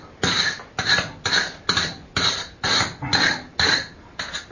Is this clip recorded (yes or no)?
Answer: yes